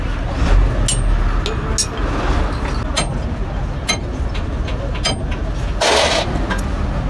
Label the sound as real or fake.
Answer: real